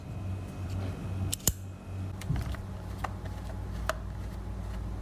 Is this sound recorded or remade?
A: recorded